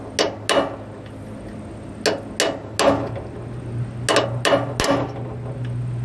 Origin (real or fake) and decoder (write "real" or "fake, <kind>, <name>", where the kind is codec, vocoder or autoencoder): real